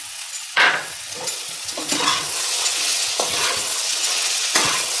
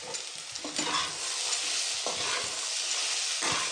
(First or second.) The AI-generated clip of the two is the first